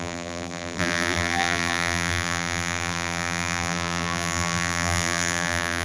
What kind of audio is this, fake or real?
fake